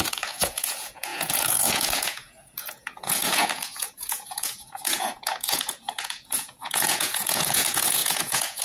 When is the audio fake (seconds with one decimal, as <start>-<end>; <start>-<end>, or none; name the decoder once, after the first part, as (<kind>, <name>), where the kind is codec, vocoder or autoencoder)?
0.0-8.6 (vocoder, Vocos)